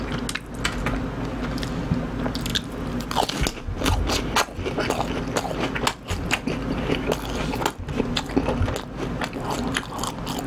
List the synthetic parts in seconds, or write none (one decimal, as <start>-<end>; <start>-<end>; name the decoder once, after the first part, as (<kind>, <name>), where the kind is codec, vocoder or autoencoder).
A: none